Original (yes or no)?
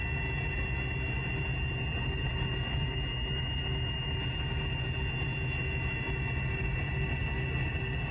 yes